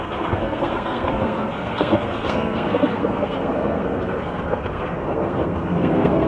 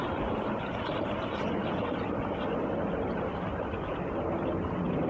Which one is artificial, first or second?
first